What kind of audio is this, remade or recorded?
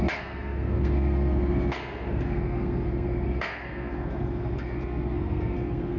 remade